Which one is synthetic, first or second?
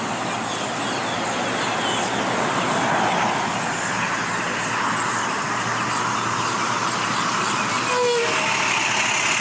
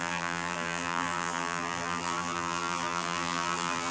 second